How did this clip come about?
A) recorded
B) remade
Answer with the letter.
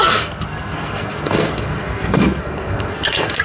B